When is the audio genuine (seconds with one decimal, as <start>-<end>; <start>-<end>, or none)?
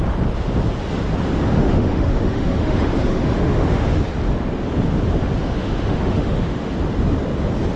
0.0-1.5; 4.0-5.4; 6.7-7.8